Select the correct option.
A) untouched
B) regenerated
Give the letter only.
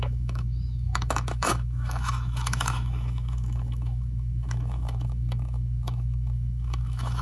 B